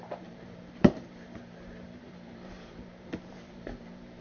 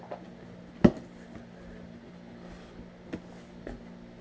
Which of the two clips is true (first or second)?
second